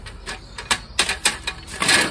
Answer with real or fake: real